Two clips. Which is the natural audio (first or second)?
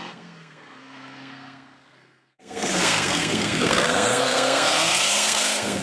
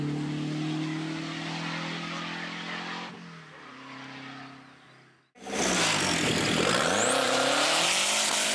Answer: second